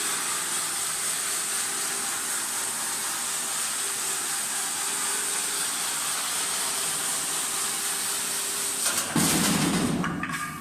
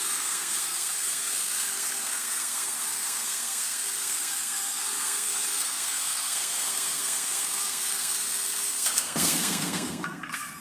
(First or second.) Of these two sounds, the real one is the first